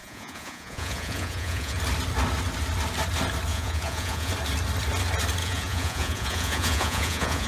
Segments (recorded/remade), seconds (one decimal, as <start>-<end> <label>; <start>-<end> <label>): 0.0-1.8 remade; 1.8-3.5 recorded; 3.5-4.3 remade; 4.3-5.4 recorded; 5.4-7.5 remade